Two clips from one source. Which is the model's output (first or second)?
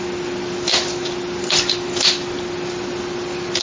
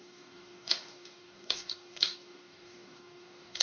second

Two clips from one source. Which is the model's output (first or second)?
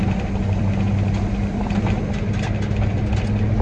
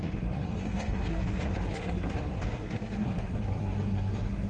second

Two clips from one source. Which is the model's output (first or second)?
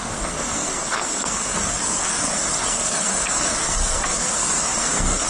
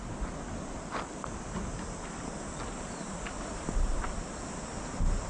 first